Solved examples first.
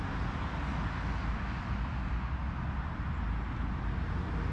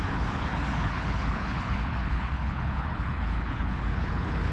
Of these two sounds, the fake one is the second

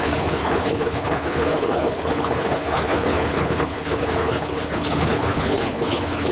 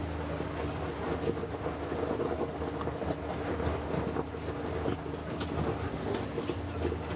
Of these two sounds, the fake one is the first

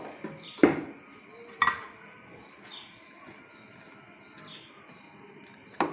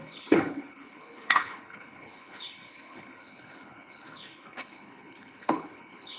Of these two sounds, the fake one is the second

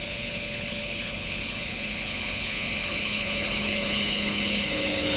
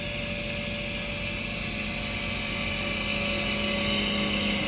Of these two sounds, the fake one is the first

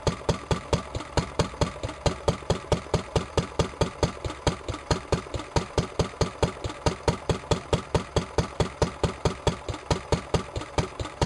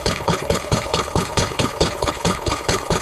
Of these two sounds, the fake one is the second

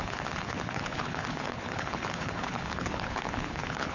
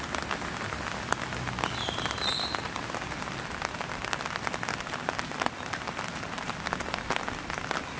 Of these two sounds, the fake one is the first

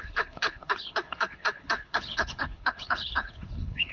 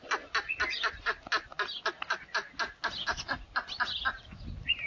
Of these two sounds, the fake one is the first